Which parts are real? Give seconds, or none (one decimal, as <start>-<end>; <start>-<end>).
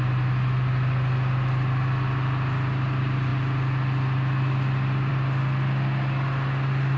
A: 0.0-7.0